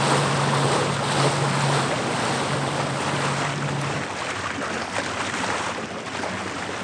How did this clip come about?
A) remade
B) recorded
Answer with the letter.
B